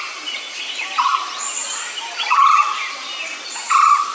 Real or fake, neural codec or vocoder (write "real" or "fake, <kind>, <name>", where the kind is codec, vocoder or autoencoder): real